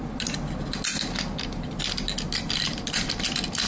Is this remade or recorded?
recorded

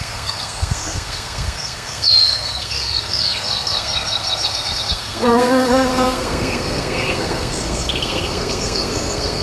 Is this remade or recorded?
remade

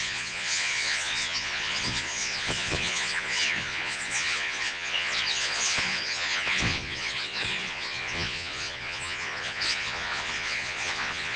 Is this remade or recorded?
remade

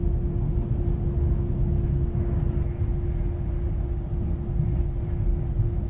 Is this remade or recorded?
recorded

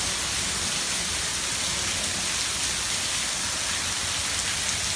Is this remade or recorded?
recorded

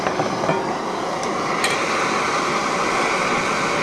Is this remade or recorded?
recorded